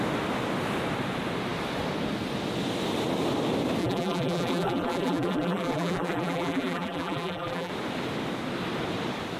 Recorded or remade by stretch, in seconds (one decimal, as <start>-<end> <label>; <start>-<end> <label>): 0.0-3.8 recorded; 3.8-7.7 remade; 7.7-9.4 recorded